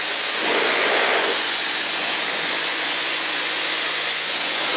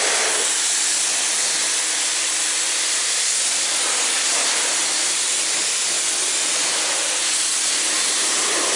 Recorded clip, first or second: second